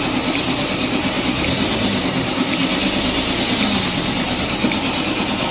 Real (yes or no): yes